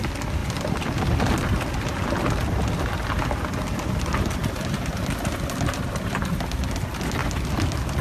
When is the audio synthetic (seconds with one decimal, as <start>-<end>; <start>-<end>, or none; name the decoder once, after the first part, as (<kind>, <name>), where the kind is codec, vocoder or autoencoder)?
0.4-1.8 (vocoder, BigVGAN v2); 7.2-8.0